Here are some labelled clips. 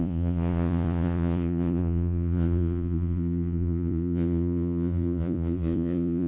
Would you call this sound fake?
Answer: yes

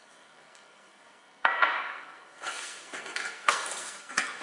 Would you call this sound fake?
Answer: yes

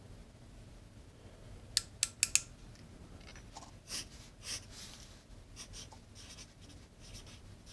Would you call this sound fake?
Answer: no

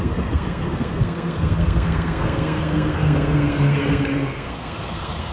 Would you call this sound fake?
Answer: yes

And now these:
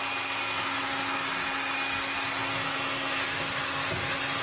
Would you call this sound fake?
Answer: no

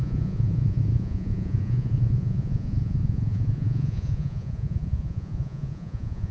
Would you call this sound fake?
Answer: yes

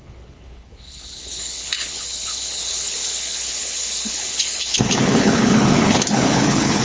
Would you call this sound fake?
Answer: yes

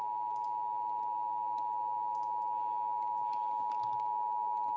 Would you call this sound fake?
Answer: no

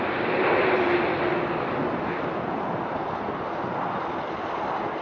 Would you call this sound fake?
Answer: no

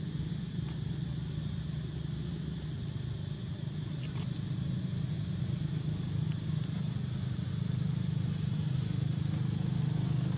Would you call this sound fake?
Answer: no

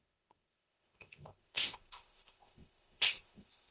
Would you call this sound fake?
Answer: yes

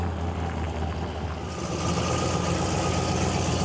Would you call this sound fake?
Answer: no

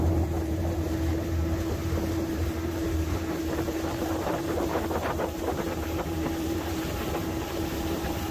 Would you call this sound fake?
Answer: yes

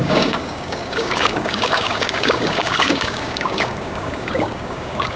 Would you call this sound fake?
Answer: yes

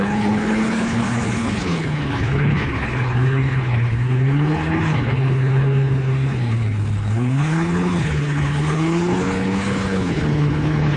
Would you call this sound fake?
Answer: yes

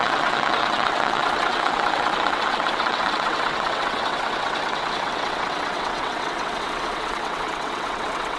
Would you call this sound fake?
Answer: yes